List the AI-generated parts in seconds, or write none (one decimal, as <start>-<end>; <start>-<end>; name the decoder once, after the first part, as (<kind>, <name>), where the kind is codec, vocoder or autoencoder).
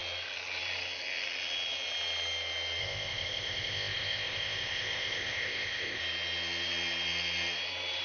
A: 2.8-6.0 (codec, ZipCodec)